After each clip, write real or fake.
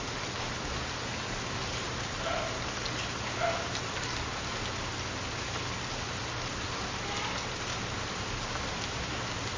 real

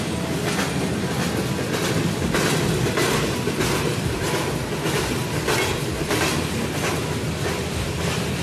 real